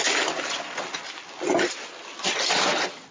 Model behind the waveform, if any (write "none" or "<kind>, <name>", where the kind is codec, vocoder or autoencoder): none